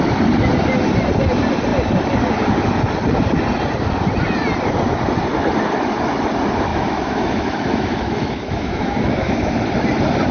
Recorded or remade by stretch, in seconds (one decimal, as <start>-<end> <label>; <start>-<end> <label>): 0.0-6.7 recorded; 6.7-9.5 remade; 9.5-10.3 recorded